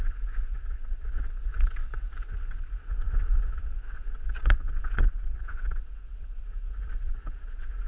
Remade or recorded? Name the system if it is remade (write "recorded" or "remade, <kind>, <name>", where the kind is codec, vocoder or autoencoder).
remade, vocoder, WaveNeXt